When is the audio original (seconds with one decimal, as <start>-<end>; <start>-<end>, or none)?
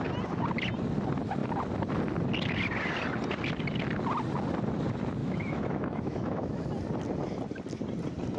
0.0-5.2; 6.6-8.4